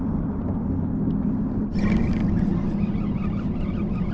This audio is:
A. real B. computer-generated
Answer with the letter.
A